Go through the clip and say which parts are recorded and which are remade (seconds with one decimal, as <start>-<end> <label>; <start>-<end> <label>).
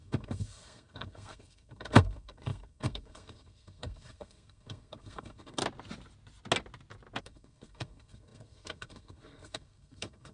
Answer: 0.0-5.6 remade; 5.6-7.2 recorded; 7.2-10.3 remade